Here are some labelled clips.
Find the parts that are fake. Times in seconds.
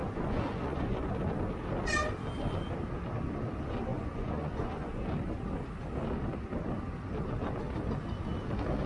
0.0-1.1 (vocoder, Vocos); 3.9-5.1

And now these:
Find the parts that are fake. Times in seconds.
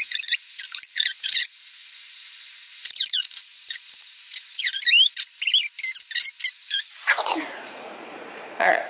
0.0-4.7 (vocoder, Vocos); 6.5-8.9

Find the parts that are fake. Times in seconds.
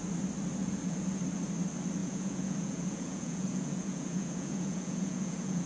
0.6-1.2 (vocoder, Vocos); 2.0-5.7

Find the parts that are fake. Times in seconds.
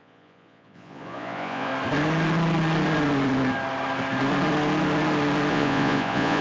0.0-1.7 (vocoder, Vocos); 5.5-6.4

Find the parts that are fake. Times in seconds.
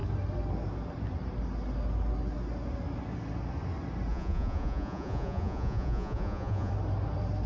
4.1-6.7 (vocoder, Vocos)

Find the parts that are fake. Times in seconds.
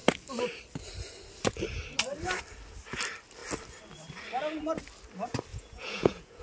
5.5-6.4 (vocoder, Vocos)